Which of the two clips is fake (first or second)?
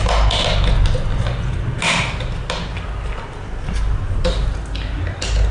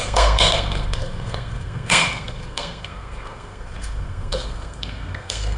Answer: second